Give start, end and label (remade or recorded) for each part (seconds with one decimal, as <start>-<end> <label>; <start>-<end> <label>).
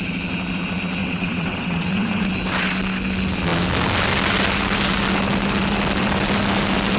0.0-1.0 recorded; 1.0-2.3 remade; 2.3-7.0 recorded